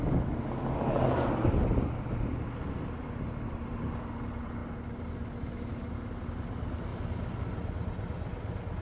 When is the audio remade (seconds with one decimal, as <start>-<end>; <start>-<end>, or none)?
6.9-7.4